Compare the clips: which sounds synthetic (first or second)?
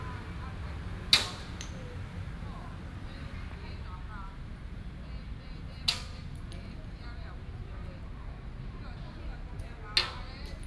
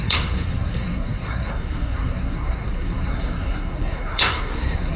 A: second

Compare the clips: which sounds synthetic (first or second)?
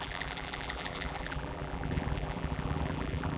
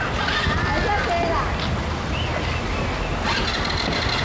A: first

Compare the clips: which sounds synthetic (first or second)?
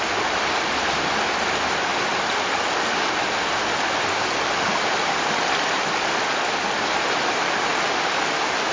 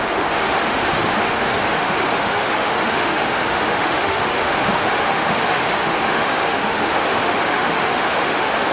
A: second